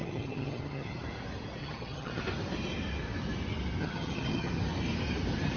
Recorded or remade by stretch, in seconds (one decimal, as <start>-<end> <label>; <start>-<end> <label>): 0.0-1.0 remade; 1.0-1.6 recorded; 1.6-2.2 remade; 2.2-3.8 recorded; 3.8-4.5 remade; 4.5-5.6 recorded